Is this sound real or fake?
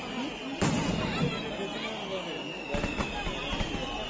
real